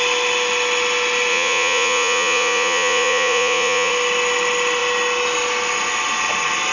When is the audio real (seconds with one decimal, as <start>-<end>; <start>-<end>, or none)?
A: 0.0-1.3; 3.9-6.7

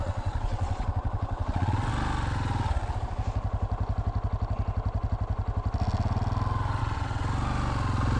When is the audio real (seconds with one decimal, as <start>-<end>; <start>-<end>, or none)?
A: 1.9-6.8; 7.2-8.2

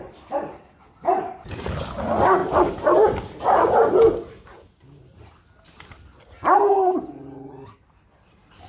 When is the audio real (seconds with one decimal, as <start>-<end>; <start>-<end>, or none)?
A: 0.0-8.7

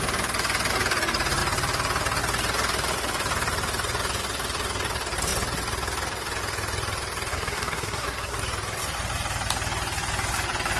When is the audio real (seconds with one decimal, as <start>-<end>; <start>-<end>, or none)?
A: 0.0-7.3; 8.4-10.8

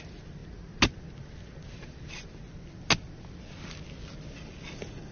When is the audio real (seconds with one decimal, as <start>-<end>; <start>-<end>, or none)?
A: 0.0-5.1

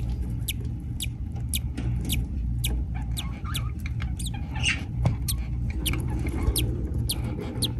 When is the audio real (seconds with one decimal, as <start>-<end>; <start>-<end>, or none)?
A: 0.0-2.1; 6.8-7.8

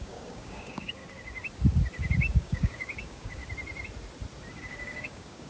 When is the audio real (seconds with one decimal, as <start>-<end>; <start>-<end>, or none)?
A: 1.0-2.4; 3.4-4.6

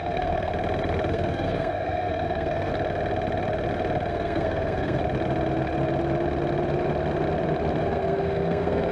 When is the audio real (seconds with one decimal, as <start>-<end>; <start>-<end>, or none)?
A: 0.5-1.1; 2.7-4.1; 5.0-7.8